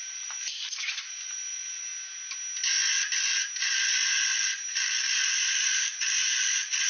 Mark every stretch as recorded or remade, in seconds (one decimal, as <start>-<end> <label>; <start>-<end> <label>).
0.0-1.9 remade; 1.9-3.6 recorded; 3.6-6.9 remade